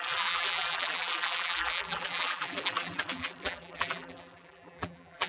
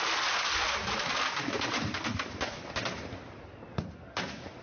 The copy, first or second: first